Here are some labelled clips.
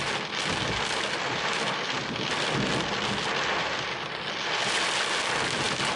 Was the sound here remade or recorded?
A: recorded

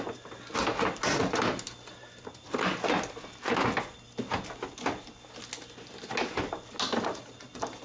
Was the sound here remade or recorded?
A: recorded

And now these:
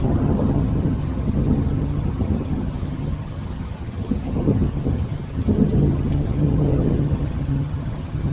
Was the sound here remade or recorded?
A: remade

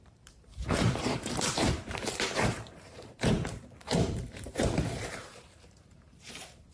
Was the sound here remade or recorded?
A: remade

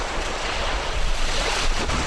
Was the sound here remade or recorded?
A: remade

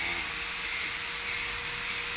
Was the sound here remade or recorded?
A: recorded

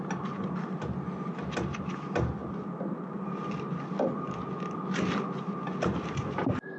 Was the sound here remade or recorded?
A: recorded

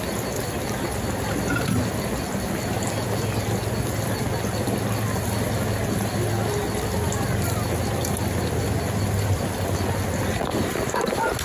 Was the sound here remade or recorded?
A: recorded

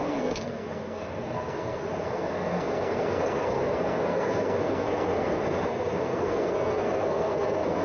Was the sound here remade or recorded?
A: remade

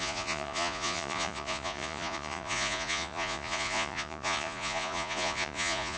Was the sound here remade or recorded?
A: remade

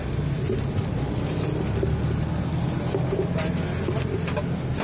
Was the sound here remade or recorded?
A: recorded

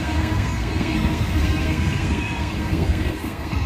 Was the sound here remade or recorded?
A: remade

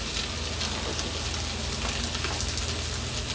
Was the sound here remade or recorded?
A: recorded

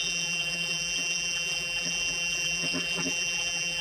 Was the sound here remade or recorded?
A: remade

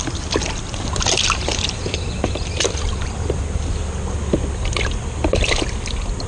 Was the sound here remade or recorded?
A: recorded